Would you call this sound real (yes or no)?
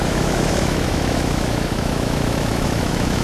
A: no